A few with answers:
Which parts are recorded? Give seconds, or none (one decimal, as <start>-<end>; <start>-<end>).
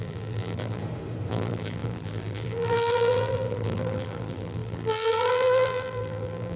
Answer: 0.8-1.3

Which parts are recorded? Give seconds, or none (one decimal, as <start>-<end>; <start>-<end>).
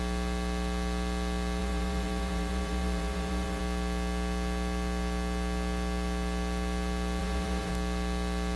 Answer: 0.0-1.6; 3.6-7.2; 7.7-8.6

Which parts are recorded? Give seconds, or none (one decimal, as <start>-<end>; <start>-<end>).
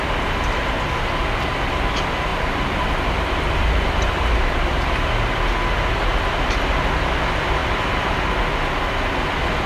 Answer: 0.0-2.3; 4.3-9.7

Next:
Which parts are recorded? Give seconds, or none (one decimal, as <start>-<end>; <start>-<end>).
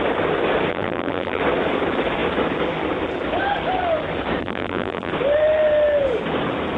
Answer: 0.0-0.7; 1.4-4.4; 5.1-6.8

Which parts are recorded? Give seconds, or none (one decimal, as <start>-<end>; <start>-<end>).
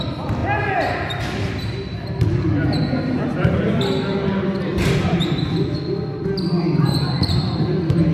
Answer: 0.0-8.1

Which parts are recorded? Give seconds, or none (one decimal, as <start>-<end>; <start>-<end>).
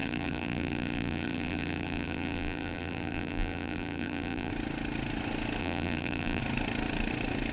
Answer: 4.5-5.6; 6.4-7.5